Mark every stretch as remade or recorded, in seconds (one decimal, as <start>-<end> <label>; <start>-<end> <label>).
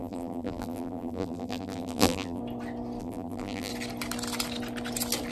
0.0-2.4 remade; 2.4-3.0 recorded; 3.0-3.7 remade; 3.7-5.3 recorded